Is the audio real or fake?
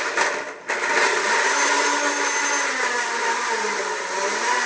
real